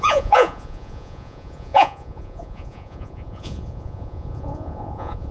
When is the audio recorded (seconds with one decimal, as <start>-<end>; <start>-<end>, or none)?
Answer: none